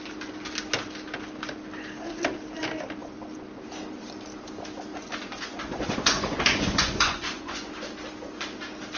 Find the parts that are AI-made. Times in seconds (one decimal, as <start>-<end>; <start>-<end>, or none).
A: 4.9-7.7